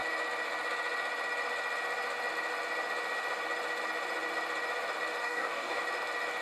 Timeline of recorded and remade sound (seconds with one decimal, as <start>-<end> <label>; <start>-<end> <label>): 0.0-5.2 recorded; 5.2-5.8 remade; 5.8-6.4 recorded